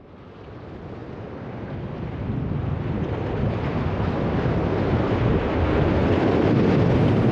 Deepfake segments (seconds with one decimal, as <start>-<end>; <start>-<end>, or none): none